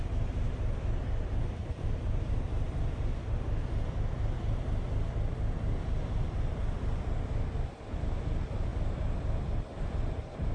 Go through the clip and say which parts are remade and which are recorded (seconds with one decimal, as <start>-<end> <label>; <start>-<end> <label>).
0.0-1.6 recorded; 1.6-2.3 remade; 2.3-10.5 recorded